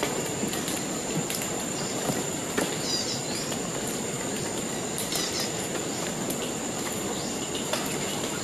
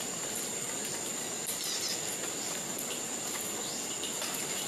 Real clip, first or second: second